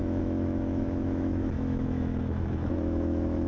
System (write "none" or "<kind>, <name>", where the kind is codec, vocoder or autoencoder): autoencoder, DAC-VAE